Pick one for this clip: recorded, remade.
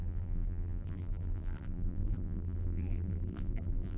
remade